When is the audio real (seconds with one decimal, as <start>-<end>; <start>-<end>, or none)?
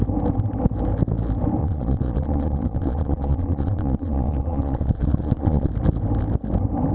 0.0-1.6; 5.7-6.9